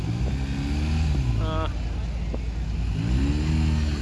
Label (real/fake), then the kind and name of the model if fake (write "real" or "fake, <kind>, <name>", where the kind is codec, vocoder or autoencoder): real